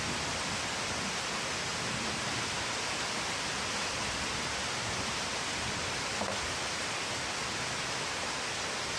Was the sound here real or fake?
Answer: real